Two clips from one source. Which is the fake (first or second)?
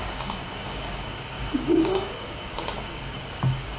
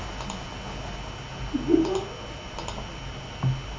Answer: first